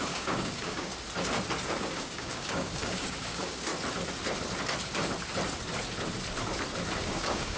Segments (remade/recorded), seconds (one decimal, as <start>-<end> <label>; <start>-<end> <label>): 0.0-0.9 remade; 0.9-1.8 recorded; 1.8-3.7 remade; 3.7-7.0 recorded; 7.0-7.6 remade